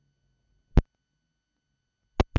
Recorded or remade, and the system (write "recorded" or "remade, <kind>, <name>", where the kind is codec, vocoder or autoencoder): recorded